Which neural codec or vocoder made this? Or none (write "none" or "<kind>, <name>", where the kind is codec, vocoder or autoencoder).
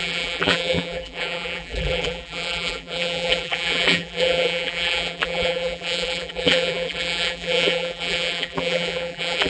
vocoder, BigVGAN v2